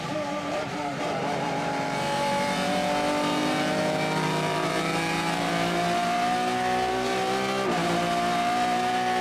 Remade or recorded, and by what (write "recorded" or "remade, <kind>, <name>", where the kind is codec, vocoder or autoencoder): remade, vocoder, BigVGAN v2